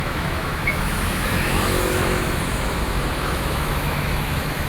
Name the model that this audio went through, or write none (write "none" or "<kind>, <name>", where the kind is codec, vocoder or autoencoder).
autoencoder, DAC-VAE